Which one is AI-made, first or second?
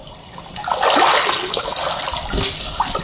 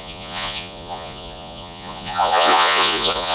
second